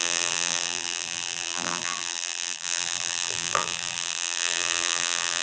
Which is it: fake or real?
fake